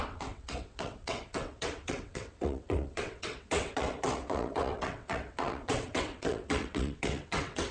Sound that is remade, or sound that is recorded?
remade